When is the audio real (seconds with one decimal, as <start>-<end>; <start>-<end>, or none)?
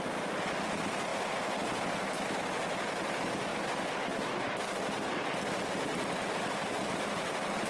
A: 0.0-3.5; 6.3-7.7